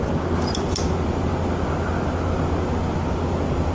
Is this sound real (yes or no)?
yes